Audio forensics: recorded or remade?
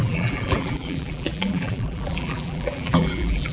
remade